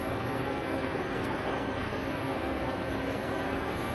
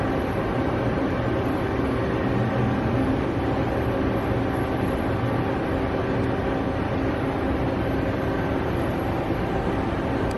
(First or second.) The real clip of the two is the second